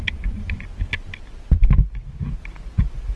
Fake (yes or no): no